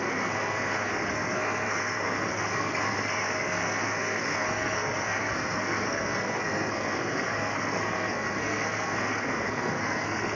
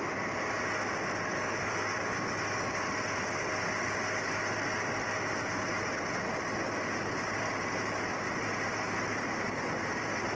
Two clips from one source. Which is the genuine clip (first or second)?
second